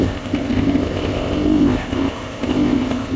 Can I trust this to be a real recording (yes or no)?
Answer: no